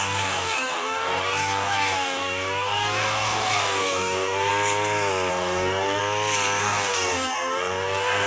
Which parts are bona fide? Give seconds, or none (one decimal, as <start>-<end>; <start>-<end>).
4.5-5.3; 6.0-6.6